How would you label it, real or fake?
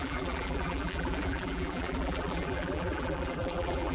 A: fake